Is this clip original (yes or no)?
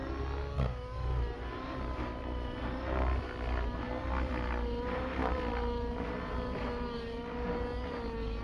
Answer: yes